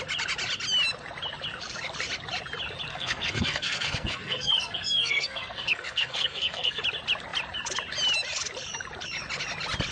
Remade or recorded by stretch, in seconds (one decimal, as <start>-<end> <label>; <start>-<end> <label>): 0.0-2.9 recorded; 2.9-6.8 remade; 6.8-9.9 recorded